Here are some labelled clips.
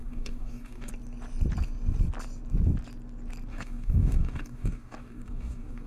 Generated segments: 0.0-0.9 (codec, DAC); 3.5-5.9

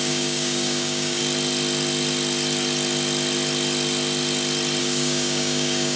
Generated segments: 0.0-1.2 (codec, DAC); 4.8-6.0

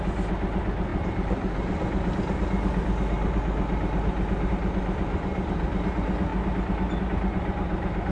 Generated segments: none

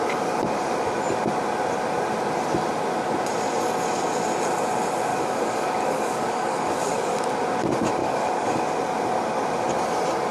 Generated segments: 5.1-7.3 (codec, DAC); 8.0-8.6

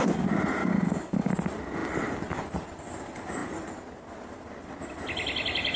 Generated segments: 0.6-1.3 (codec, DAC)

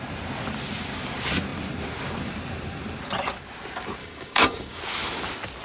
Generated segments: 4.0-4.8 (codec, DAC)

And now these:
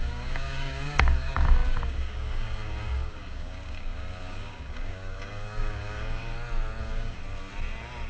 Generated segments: 0.0-6.3 (codec, DAC); 6.8-7.2

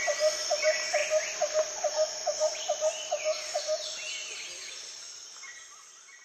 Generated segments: none